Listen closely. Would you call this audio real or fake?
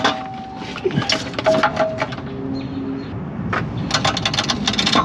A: real